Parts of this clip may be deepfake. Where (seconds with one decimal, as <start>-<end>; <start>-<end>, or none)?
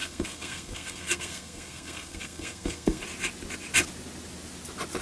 0.0-3.0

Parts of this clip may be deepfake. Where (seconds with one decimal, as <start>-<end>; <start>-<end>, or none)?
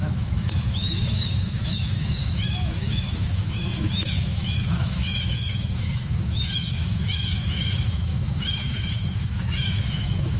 0.0-10.4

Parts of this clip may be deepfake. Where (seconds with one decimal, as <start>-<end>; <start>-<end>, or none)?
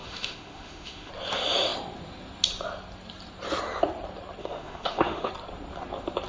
0.0-1.1; 4.4-5.3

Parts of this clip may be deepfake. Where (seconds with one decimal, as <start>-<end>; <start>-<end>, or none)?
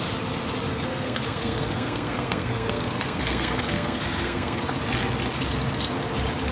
0.7-4.6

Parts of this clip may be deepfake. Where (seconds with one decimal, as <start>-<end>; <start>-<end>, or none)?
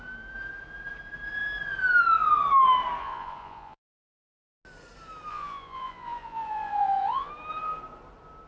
3.0-4.6; 5.3-7.3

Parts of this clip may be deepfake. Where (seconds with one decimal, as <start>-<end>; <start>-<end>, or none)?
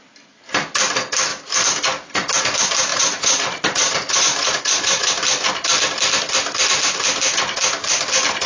2.9-5.1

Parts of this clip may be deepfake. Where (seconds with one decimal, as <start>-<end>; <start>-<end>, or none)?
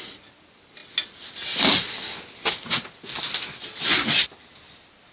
none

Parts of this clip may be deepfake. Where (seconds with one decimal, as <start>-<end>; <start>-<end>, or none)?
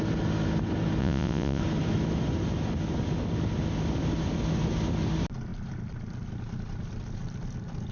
1.0-1.6